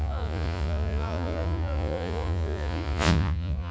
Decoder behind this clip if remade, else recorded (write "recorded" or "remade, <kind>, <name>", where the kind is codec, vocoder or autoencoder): remade, vocoder, Vocos